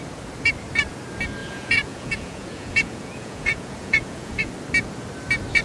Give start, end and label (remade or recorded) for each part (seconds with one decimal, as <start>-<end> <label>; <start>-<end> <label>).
0.0-1.4 recorded; 1.4-4.5 remade; 4.5-5.6 recorded